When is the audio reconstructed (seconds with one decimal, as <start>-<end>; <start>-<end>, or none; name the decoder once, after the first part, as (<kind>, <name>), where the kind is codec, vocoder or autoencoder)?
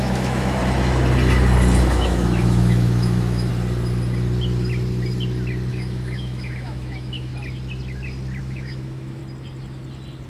0.0-0.6 (autoencoder, DAC-VAE); 1.9-3.5; 5.7-7.3; 8.4-9.2